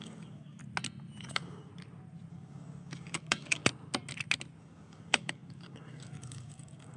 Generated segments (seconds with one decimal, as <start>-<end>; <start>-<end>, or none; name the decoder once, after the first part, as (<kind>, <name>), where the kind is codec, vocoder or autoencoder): 0.0-0.6 (codec, DAC); 1.2-1.7; 2.3-3.6; 4.6-7.0